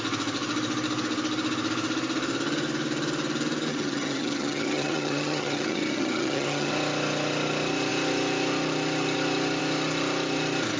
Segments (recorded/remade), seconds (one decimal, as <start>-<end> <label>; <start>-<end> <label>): 0.0-3.7 recorded; 3.7-6.7 remade; 6.7-10.8 recorded

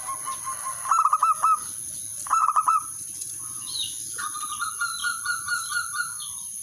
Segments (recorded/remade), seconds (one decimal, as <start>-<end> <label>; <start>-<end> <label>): 0.0-2.4 recorded; 2.4-3.7 remade; 3.7-6.6 recorded

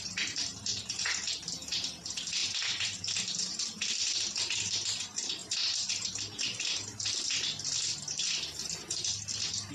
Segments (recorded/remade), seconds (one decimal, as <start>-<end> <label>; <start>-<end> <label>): 0.0-2.4 remade; 2.4-3.5 recorded; 3.5-9.7 remade

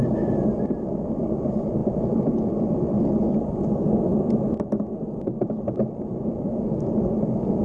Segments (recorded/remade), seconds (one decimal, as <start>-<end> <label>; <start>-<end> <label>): 0.0-7.6 remade